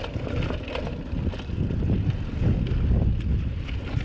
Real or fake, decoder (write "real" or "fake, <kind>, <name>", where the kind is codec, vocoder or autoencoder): real